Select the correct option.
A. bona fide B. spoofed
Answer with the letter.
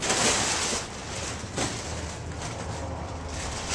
A